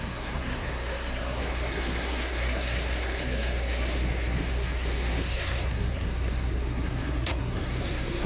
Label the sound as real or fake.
fake